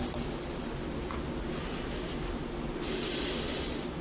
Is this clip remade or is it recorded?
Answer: recorded